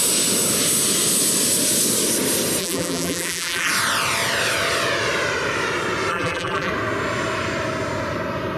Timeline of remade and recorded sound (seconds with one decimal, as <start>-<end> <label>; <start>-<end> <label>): 0.0-2.6 recorded; 2.6-3.7 remade; 3.7-6.1 recorded; 6.1-6.7 remade; 6.7-8.6 recorded